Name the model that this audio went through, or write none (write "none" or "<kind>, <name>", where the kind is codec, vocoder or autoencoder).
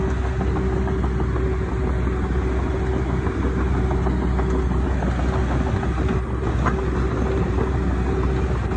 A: none